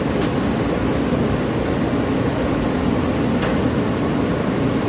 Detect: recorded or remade recorded